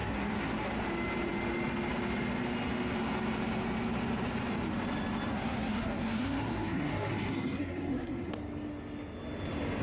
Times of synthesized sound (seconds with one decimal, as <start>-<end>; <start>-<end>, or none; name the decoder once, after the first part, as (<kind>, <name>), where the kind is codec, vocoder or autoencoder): 0.0-0.7 (codec, SNAC); 5.3-8.3

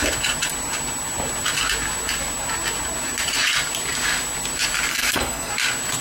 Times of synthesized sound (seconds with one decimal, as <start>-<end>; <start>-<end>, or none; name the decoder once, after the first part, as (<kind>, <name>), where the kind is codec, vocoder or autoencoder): 4.9-5.5 (codec, SNAC)

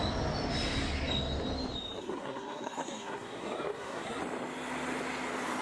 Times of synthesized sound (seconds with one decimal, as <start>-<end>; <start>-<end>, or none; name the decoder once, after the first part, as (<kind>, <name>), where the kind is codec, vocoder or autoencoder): 2.0-4.2 (codec, SNAC)

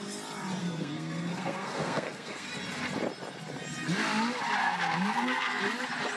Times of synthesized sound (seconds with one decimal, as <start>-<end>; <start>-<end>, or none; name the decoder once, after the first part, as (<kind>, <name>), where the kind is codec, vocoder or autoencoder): 0.6-2.5 (codec, SNAC); 4.6-5.6

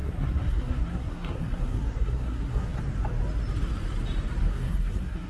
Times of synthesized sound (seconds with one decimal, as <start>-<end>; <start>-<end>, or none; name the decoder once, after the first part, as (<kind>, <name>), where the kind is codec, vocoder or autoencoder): 0.0-2.8 (codec, SNAC); 4.5-5.3